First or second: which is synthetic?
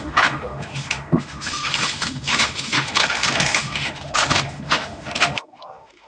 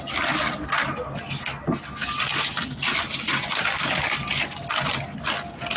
first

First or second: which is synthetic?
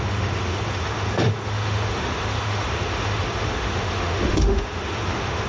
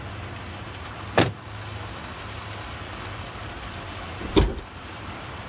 first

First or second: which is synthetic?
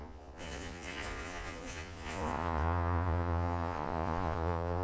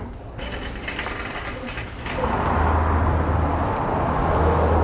first